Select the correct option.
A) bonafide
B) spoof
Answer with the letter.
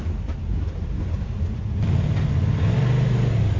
A